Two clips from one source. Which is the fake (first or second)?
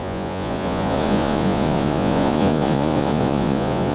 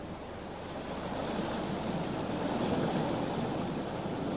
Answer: first